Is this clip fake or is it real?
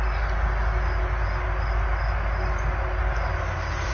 real